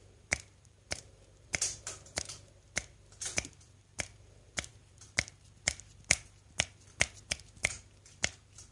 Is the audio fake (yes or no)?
yes